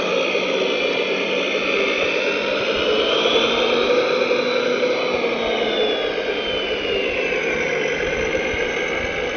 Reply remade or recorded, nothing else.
recorded